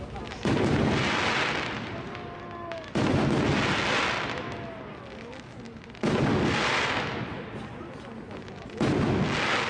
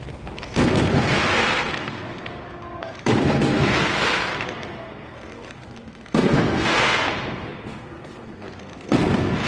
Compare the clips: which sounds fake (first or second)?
second